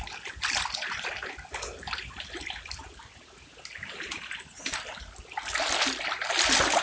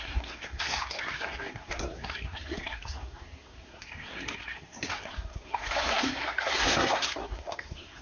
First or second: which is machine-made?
second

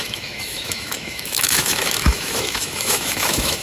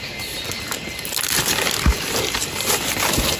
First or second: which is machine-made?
first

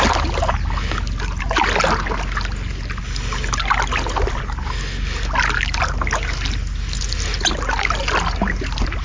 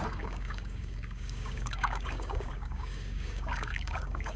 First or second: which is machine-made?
second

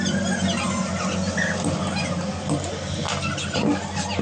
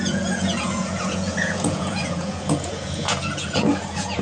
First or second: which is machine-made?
second